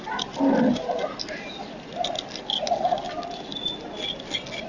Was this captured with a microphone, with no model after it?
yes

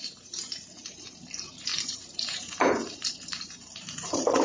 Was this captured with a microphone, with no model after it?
no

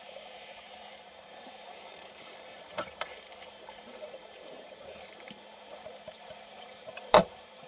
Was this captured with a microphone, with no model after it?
no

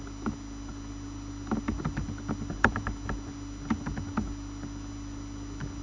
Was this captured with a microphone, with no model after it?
yes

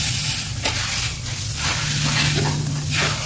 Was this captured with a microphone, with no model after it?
yes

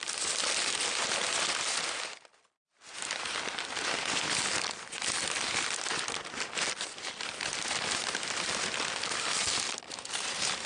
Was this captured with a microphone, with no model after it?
yes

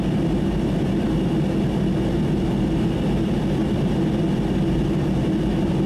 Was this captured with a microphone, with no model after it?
yes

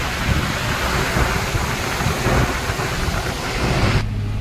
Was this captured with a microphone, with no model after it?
yes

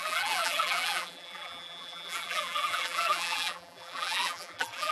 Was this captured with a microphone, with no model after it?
no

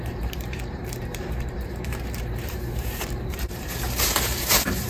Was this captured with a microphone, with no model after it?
no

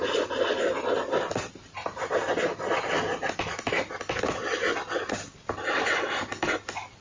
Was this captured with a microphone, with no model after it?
yes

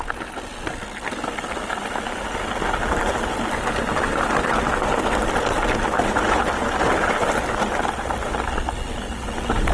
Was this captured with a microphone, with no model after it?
yes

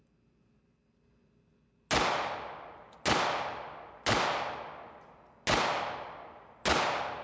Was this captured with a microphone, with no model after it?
yes